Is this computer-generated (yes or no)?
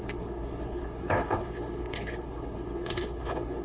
yes